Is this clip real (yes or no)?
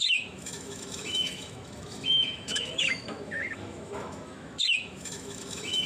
no